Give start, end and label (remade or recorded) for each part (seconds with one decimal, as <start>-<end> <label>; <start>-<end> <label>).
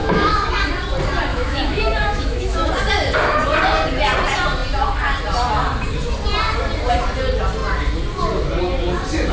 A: 0.0-0.5 remade; 0.5-1.3 recorded; 1.3-2.7 remade; 2.7-9.3 recorded